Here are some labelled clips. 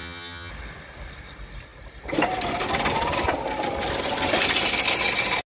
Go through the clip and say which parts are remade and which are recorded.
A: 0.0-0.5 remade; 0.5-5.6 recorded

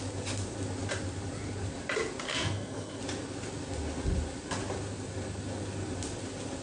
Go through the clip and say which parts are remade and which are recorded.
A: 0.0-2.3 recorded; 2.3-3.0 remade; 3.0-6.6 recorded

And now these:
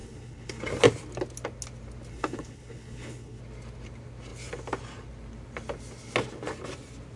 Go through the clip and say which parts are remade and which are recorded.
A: 0.0-0.6 remade; 0.6-2.1 recorded; 2.1-3.4 remade; 3.4-7.2 recorded

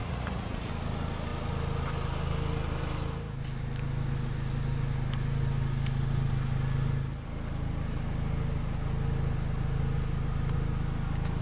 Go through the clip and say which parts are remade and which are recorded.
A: 0.0-0.7 remade; 0.7-11.4 recorded

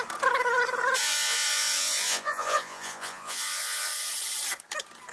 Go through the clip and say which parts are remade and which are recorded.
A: 0.0-1.0 recorded; 1.0-4.1 remade; 4.1-5.1 recorded